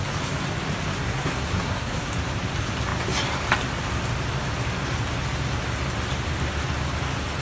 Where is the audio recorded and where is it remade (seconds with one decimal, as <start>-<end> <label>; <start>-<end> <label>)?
0.0-0.9 recorded; 0.9-2.1 remade; 2.1-7.4 recorded